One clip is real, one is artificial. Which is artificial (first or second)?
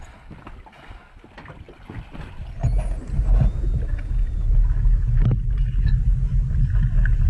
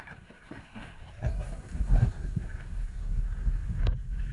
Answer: second